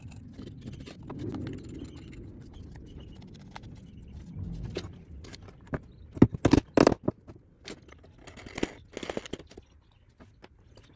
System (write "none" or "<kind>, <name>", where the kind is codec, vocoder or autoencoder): none